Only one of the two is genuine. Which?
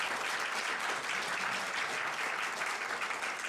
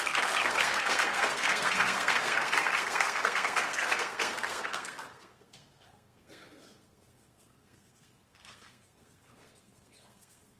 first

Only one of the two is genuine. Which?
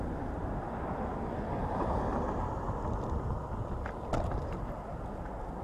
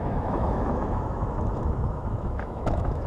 first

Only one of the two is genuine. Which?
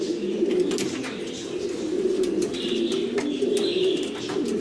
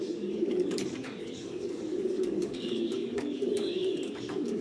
first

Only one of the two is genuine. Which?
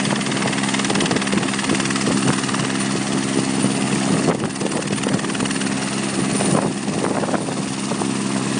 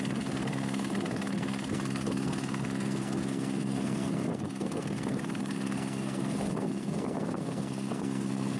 first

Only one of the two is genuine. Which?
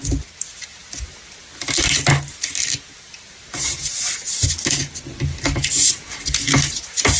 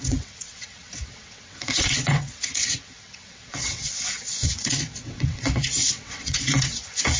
first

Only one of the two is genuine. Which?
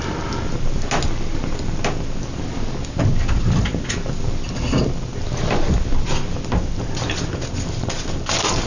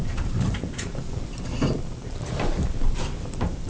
first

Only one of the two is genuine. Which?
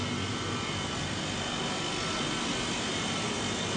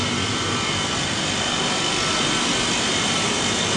first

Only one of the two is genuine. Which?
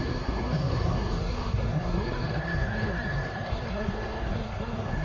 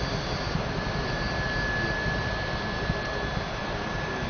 second